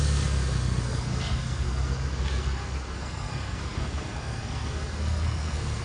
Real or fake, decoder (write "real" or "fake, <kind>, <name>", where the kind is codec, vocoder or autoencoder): fake, codec, SNAC